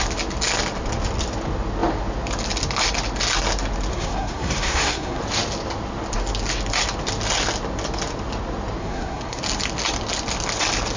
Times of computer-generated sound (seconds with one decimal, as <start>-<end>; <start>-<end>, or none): 3.9-5.2; 8.8-9.4